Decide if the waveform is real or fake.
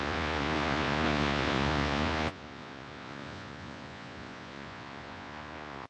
fake